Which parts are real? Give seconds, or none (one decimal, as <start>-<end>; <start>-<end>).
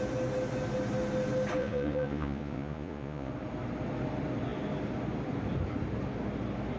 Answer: 0.0-1.6; 3.3-6.8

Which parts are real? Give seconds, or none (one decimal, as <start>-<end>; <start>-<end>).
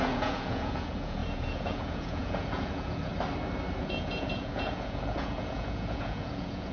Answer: 3.1-3.8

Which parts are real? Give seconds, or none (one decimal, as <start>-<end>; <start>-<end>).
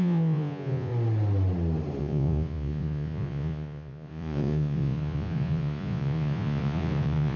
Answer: 0.9-2.0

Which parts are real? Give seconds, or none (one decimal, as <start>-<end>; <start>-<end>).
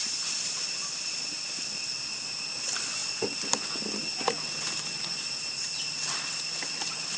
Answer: 0.0-7.2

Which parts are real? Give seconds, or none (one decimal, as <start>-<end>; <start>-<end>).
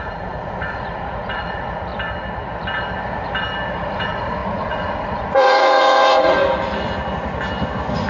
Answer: 1.9-3.7; 6.4-8.1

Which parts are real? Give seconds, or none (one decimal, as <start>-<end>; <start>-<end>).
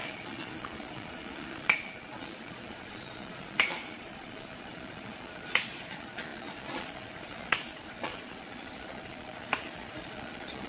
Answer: none